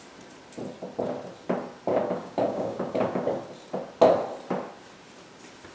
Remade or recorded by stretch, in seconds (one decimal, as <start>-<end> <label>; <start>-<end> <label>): 0.0-1.9 recorded; 1.9-3.3 remade; 3.3-5.7 recorded